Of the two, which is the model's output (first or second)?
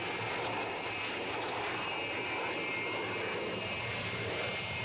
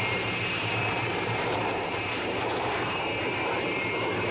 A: second